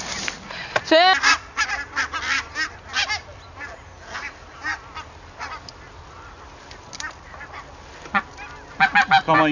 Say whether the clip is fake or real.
real